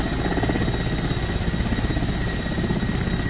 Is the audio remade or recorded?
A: recorded